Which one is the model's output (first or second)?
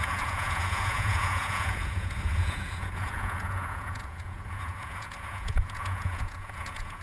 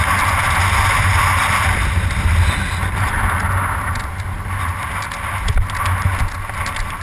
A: first